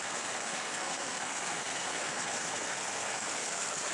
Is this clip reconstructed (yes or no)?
yes